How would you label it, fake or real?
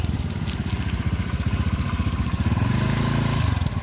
real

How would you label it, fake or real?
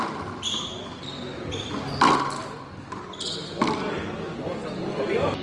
real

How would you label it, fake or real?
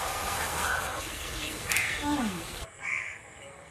fake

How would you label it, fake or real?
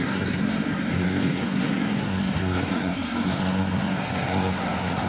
fake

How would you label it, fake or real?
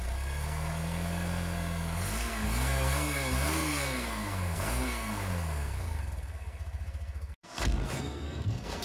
fake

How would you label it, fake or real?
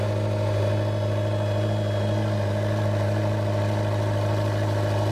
real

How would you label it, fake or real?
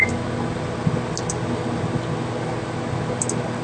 real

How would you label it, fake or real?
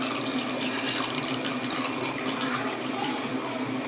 real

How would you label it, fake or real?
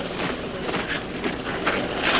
real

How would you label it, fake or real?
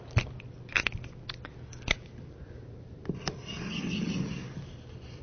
real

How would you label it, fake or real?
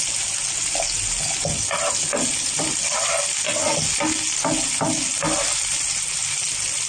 real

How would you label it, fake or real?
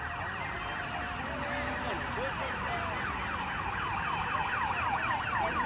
real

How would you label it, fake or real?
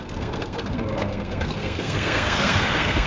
fake